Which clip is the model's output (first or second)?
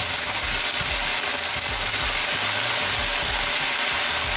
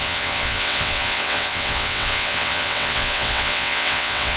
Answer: second